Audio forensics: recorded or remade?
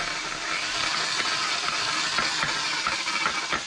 recorded